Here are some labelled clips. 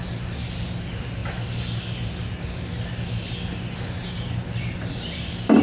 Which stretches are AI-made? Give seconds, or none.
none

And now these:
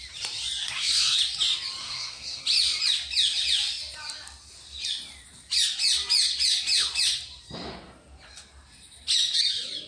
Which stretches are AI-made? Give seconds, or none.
0.6-1.2; 1.8-2.4

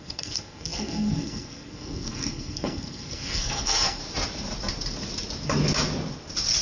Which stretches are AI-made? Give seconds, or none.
0.0-4.0

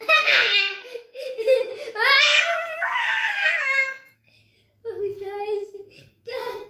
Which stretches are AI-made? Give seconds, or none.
0.0-1.7; 2.2-4.4; 5.0-6.7